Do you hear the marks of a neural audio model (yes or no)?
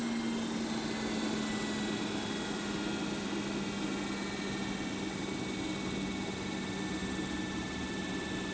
no